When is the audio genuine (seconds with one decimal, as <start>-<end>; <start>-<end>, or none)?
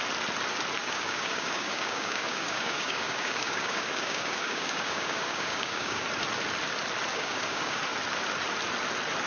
0.0-0.8; 6.0-7.1; 7.8-9.3